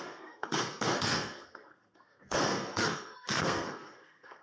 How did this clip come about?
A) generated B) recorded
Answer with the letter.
A